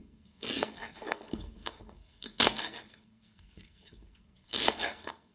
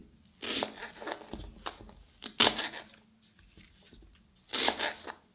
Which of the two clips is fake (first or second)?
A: first